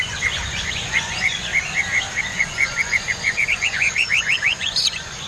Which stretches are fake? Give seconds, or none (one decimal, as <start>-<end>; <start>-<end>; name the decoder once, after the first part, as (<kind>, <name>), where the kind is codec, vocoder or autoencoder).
0.0-1.5 (vocoder, Vocos); 2.2-5.3